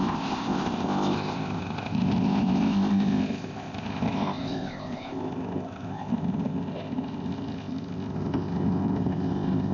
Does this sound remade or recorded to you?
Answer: remade